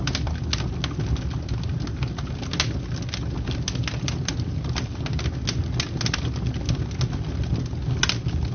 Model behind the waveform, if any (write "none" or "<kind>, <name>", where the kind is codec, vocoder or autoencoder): none